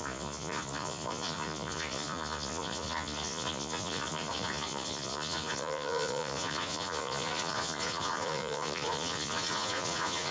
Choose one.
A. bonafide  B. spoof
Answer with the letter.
B